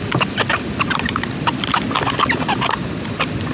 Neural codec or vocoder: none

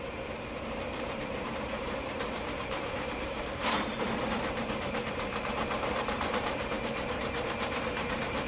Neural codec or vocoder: vocoder, BigVGAN v2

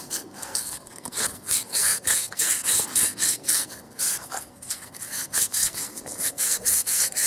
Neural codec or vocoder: codec, SNAC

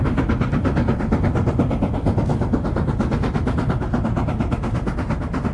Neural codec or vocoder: vocoder, BigVGAN v2